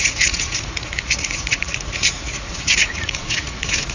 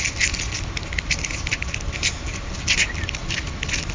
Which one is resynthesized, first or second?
first